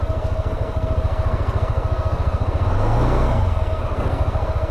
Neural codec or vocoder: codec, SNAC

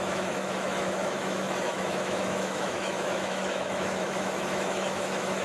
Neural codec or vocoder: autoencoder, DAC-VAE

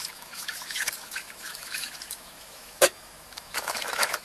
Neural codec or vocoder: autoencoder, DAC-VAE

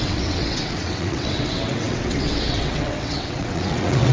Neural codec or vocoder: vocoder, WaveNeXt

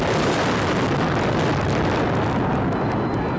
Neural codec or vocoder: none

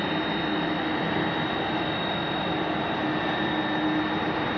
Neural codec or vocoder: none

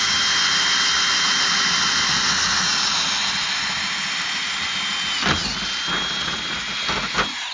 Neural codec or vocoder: none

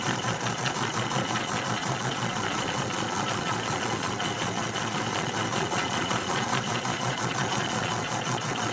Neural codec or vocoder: vocoder, Vocos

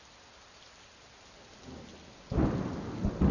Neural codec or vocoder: none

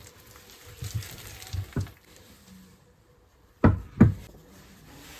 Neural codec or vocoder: vocoder, BigVGAN v2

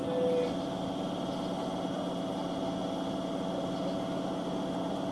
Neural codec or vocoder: none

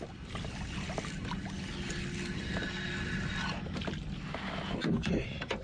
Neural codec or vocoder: none